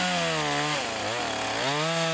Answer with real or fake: real